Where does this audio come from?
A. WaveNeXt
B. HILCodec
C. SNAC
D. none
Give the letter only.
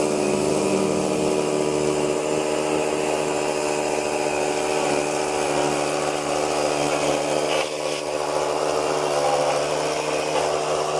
D